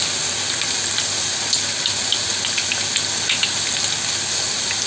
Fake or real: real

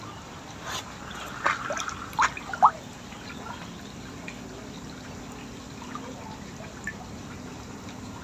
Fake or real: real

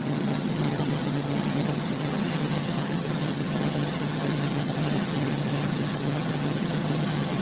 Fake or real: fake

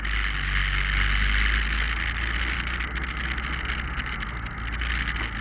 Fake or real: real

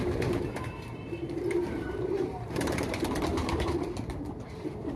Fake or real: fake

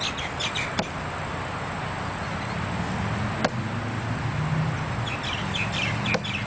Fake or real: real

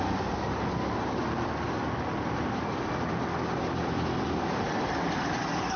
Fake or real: real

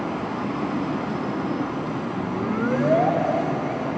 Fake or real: real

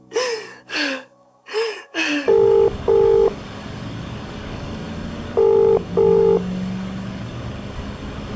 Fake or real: fake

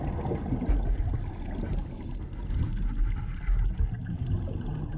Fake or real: real